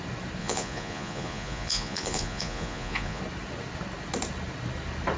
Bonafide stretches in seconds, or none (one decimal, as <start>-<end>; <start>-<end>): 0.0-0.4; 3.2-5.2